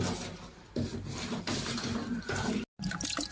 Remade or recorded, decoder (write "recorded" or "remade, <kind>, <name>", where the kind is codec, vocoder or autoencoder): recorded